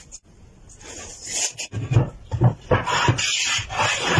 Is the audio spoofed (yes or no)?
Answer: no